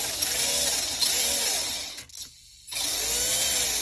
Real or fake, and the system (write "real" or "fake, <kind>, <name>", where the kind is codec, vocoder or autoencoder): real